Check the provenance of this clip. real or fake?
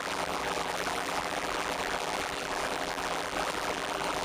fake